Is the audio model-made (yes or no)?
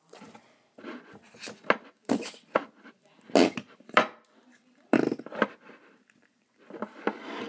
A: yes